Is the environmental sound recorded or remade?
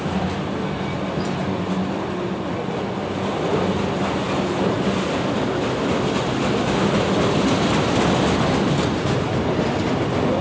recorded